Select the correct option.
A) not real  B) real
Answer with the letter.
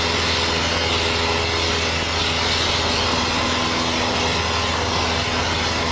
B